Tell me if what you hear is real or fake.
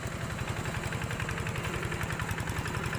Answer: real